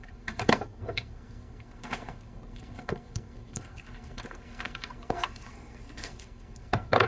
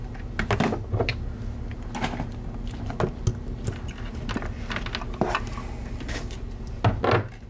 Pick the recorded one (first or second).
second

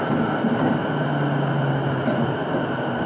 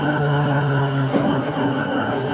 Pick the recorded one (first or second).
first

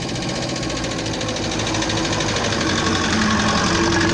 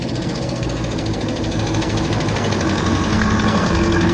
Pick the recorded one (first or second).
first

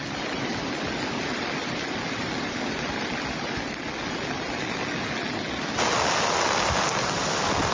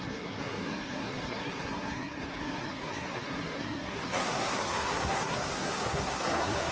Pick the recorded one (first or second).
first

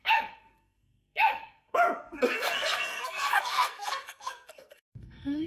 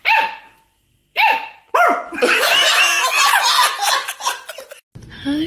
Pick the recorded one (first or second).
second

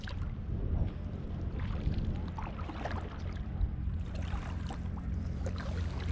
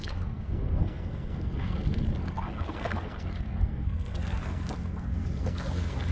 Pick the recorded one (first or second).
first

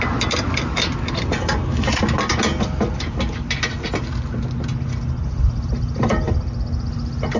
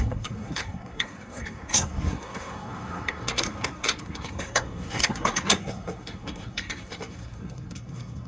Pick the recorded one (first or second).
first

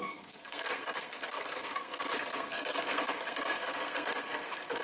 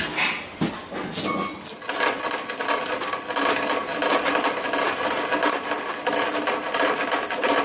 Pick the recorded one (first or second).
second